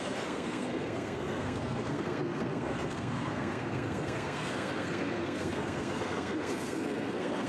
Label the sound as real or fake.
fake